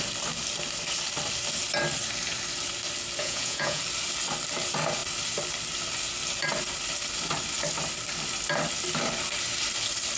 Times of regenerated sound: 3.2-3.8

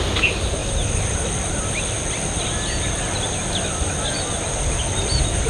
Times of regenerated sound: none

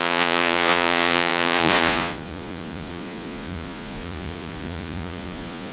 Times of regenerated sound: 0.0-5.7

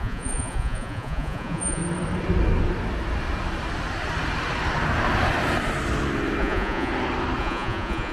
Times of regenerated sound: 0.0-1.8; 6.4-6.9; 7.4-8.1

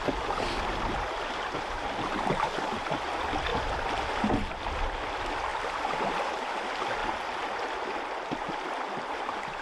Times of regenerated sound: none

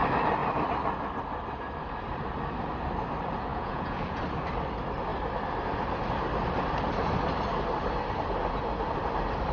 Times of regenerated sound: 3.5-4.2

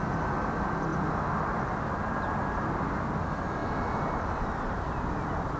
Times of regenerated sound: none

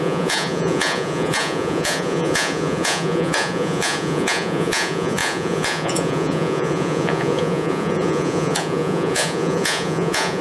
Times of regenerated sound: 0.0-10.4